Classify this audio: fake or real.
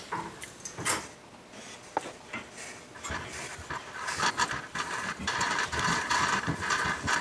real